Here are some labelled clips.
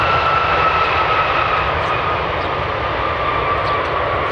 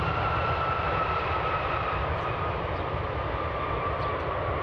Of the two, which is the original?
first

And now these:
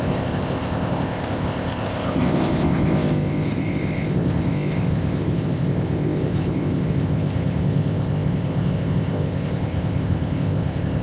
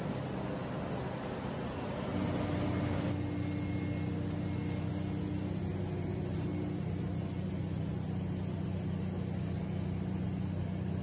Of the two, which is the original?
second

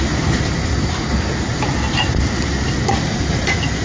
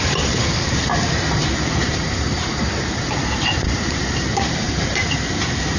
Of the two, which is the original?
first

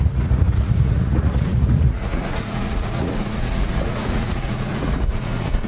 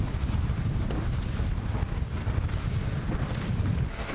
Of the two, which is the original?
second